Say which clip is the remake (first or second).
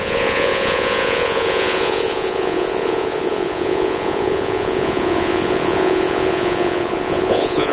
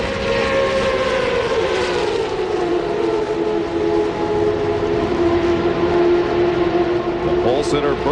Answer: first